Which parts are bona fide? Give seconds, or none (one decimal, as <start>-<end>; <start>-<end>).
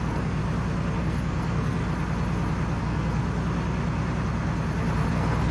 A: 0.4-1.0; 1.8-2.8; 3.2-5.1